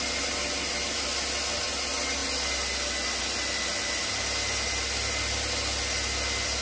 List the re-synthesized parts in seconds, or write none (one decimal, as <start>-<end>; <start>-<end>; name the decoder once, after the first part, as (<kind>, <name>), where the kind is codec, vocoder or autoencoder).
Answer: none